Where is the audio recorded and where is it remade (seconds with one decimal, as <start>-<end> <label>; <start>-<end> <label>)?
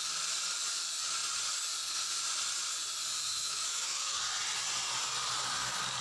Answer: 0.0-3.3 recorded; 3.3-4.2 remade; 4.2-6.0 recorded